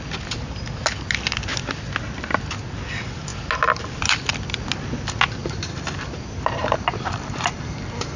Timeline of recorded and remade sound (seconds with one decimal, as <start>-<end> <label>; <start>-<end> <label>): 0.0-5.4 recorded; 5.4-6.1 remade; 6.1-6.6 recorded; 6.6-8.2 remade